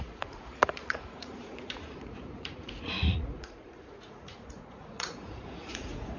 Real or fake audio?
fake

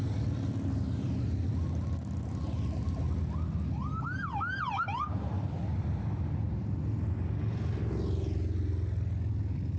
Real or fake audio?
real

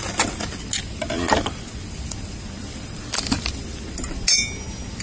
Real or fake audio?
real